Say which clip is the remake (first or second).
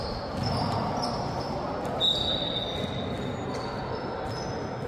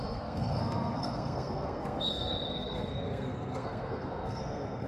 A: second